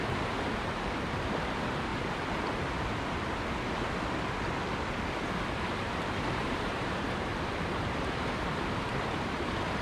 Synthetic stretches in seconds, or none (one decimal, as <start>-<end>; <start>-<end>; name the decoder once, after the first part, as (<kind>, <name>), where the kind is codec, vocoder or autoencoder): 0.0-1.9 (vocoder, BigVGAN v2); 5.7-7.3; 9.0-9.8